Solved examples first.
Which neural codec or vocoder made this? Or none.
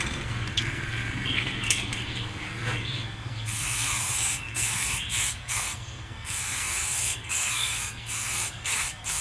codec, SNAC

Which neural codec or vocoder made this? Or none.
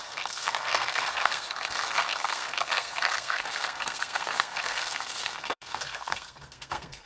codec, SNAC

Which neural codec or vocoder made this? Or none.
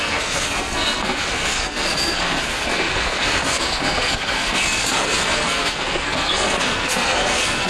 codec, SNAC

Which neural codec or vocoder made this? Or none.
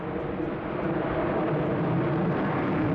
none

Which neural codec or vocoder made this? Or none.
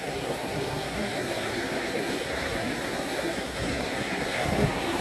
codec, SNAC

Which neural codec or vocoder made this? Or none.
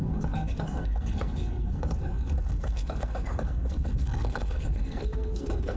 codec, SNAC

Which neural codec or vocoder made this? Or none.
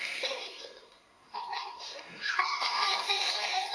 codec, SNAC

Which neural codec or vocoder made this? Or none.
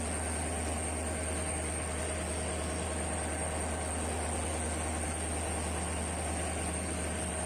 none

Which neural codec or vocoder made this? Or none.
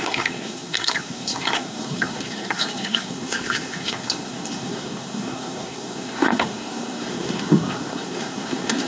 codec, SNAC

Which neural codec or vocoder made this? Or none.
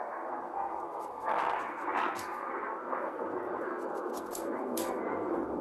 codec, SNAC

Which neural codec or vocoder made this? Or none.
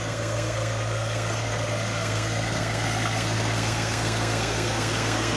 codec, SNAC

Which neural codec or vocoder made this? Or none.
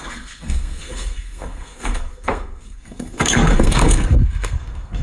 codec, SNAC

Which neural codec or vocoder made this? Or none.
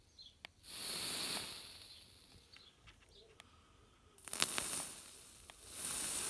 none